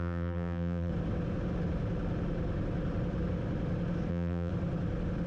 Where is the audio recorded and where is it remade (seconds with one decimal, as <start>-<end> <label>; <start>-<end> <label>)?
0.0-0.9 remade; 0.9-4.1 recorded; 4.1-4.5 remade; 4.5-5.3 recorded